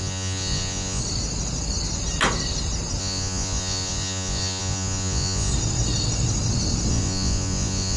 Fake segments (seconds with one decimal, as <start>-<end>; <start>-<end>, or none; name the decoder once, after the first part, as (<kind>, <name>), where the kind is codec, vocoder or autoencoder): 0.0-1.0 (vocoder, Vocos); 3.0-5.5; 6.9-8.0